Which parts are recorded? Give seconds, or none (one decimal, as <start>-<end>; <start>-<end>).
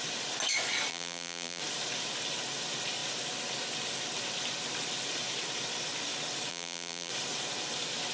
0.0-0.9; 1.6-6.5; 7.1-8.1